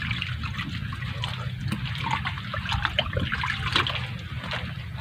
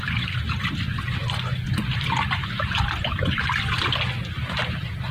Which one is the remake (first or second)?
second